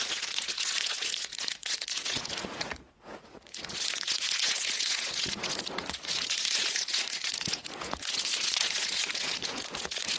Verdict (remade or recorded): remade